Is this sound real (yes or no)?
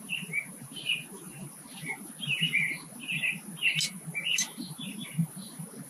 yes